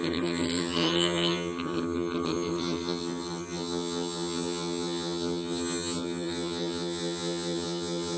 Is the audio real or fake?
fake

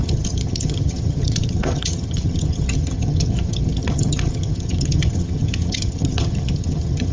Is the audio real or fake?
fake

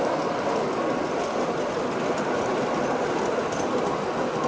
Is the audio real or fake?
real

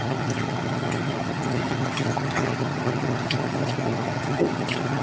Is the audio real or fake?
fake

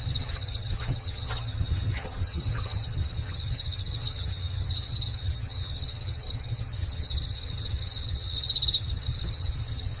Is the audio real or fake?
fake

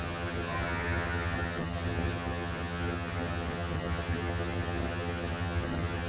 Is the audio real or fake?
fake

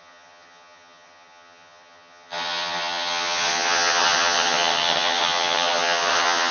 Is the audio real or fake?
fake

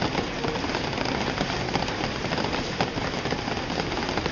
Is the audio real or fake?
real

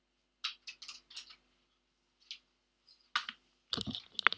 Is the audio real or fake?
real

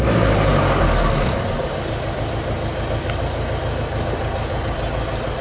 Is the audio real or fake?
real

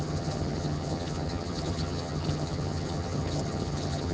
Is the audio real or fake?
fake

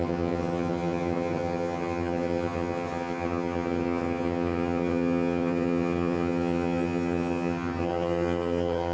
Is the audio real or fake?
fake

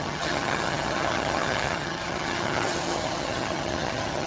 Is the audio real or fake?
fake